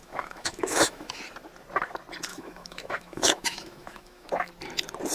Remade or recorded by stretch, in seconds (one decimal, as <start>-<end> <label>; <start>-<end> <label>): 0.0-1.2 remade; 1.2-2.3 recorded; 2.3-4.5 remade; 4.5-5.1 recorded